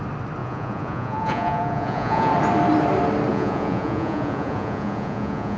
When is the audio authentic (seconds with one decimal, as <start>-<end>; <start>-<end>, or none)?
0.0-0.4; 2.3-3.3